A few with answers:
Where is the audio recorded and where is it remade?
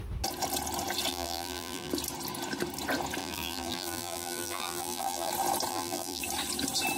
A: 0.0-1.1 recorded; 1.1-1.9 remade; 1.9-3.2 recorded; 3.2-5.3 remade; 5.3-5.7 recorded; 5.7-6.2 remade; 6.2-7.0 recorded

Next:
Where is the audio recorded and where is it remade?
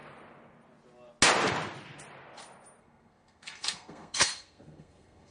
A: 0.0-2.8 recorded; 2.8-5.3 remade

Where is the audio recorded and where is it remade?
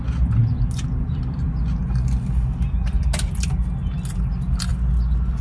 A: 0.0-5.4 recorded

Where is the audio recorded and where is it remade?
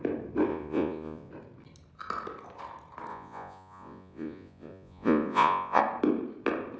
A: 0.0-0.5 recorded; 0.5-1.3 remade; 1.3-3.1 recorded; 3.1-5.8 remade; 5.8-6.8 recorded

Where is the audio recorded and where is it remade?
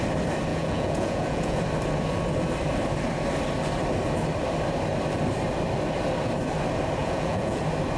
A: 0.0-0.5 recorded; 0.5-1.6 remade; 1.6-7.0 recorded; 7.0-7.6 remade; 7.6-8.0 recorded